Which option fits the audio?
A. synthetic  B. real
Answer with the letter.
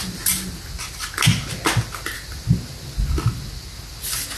B